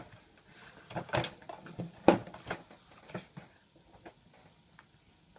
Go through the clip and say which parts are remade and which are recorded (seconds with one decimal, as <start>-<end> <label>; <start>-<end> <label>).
0.0-5.4 recorded